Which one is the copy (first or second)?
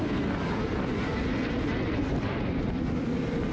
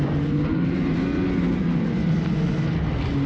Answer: first